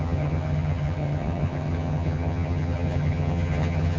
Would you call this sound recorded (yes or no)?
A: no